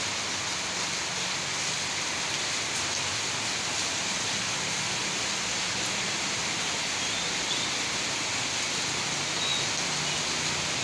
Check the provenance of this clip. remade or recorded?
recorded